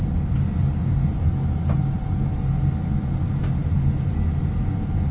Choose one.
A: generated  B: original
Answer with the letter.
B